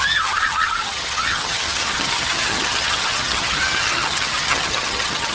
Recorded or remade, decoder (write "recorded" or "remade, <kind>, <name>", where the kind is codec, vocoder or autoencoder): remade, vocoder, HiFi-GAN